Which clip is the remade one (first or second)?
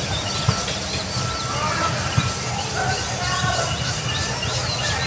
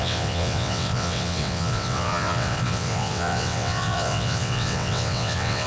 second